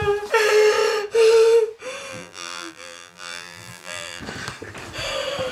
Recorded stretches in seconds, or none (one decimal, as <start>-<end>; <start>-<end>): 0.0-2.1; 4.2-5.5